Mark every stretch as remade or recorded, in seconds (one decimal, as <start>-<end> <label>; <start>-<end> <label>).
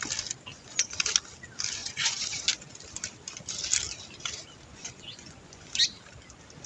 0.0-0.5 recorded; 0.5-1.1 remade; 1.1-1.8 recorded; 1.8-2.4 remade; 2.4-4.7 recorded; 4.7-5.7 remade; 5.7-6.7 recorded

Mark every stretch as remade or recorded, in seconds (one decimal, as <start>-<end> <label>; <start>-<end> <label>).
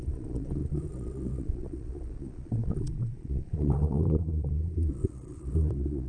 0.0-6.1 remade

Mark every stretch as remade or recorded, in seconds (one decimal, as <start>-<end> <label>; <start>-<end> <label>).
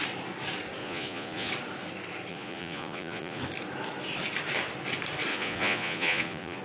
0.0-0.8 recorded; 0.8-1.5 remade; 1.5-2.3 recorded; 2.3-3.4 remade; 3.4-5.3 recorded; 5.3-6.6 remade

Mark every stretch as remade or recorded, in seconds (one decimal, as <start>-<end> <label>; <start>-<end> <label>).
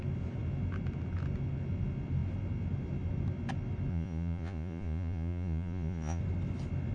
0.0-3.9 recorded; 3.9-6.2 remade; 6.2-6.9 recorded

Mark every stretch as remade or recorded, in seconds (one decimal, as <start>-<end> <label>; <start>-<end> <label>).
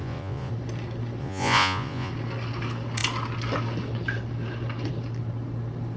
0.0-0.5 remade; 0.5-1.2 recorded; 1.2-2.1 remade; 2.1-6.0 recorded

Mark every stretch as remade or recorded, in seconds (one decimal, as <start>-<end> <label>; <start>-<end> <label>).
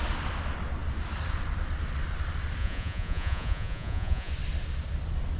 0.0-2.6 recorded; 2.6-4.3 remade; 4.3-5.4 recorded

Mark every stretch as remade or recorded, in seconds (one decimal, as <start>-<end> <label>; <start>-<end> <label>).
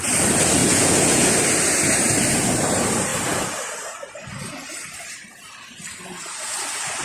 0.0-0.6 recorded; 0.6-1.3 remade; 1.3-7.0 recorded